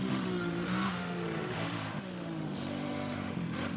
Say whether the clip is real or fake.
fake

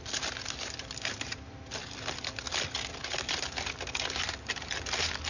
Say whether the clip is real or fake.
real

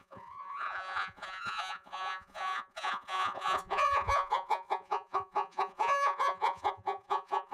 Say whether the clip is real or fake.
fake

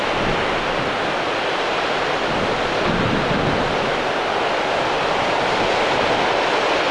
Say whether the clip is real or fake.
real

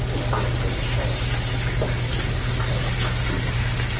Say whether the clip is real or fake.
real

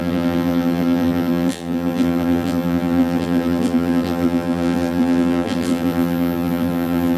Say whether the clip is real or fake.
fake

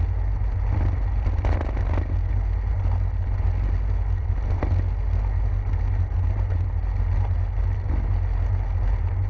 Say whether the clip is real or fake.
real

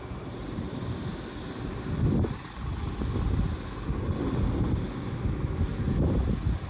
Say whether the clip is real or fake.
real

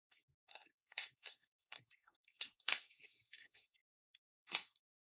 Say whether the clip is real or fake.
fake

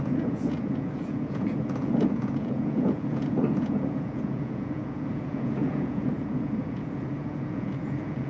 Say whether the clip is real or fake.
fake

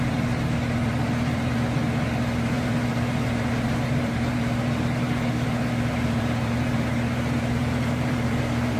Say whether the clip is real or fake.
fake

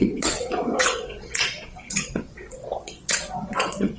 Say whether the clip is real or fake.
fake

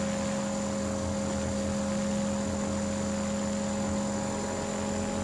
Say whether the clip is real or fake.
real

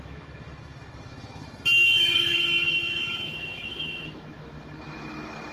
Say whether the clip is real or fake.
fake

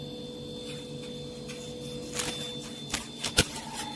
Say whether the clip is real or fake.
real